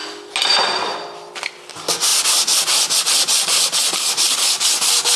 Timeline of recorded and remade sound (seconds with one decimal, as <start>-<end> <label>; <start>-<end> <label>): 0.0-5.2 recorded